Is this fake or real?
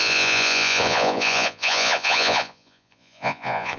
fake